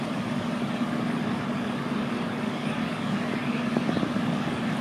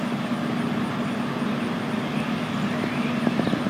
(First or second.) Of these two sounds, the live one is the second